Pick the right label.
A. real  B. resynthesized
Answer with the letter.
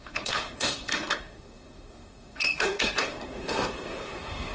B